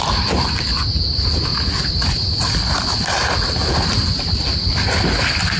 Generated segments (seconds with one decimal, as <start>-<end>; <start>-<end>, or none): none